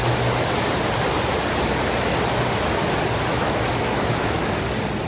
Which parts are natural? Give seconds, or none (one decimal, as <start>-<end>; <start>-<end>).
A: 0.0-3.3; 4.4-5.1